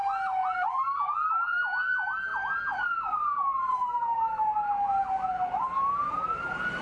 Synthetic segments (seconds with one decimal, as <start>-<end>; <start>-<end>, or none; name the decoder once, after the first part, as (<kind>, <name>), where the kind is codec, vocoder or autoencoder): none